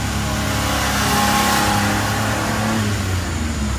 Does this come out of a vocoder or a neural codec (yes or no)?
no